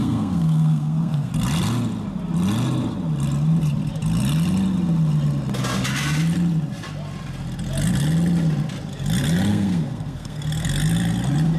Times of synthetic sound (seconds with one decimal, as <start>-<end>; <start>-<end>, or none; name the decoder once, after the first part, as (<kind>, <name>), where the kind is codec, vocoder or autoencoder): 0.0-1.3 (codec, SNAC); 9.5-10.4